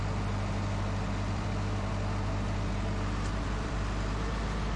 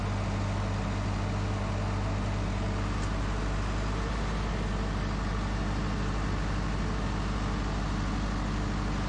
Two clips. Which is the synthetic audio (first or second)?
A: first